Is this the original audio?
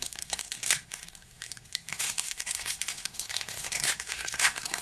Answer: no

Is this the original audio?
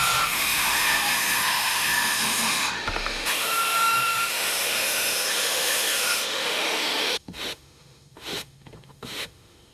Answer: no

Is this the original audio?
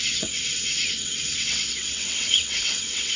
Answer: no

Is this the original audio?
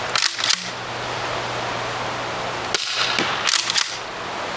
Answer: yes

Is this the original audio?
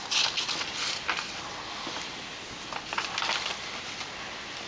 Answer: yes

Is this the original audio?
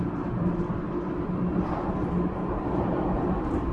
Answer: yes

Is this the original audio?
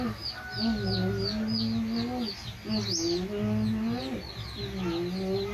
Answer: yes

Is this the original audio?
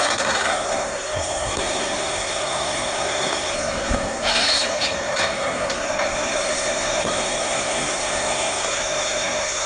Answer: no